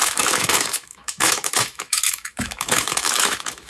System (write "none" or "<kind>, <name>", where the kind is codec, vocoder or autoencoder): autoencoder, DAC-VAE